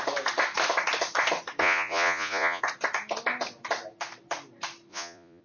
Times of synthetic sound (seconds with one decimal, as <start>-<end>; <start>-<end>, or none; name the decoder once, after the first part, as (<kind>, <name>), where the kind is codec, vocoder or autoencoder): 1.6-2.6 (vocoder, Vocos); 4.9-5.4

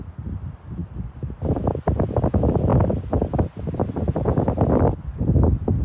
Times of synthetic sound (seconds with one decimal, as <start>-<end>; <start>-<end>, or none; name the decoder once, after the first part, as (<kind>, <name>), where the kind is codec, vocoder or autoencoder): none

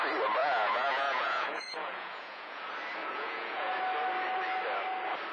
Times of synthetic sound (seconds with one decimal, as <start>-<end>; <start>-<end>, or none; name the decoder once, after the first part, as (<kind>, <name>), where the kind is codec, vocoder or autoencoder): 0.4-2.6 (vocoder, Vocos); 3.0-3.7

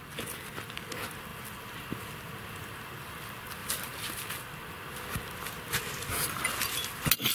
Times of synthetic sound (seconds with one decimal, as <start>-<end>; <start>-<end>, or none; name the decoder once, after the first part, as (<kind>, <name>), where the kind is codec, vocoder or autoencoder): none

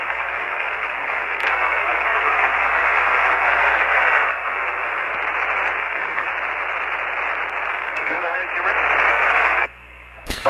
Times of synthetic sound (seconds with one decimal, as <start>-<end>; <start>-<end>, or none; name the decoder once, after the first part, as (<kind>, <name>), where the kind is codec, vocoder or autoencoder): 0.0-5.1 (codec, SNAC); 5.8-6.3; 7.7-8.4; 9.1-10.5

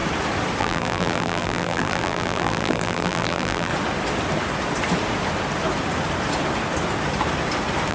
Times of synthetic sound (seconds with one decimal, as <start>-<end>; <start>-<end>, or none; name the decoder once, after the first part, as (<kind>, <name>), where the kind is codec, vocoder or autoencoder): 0.6-3.7 (vocoder, BigVGAN v2)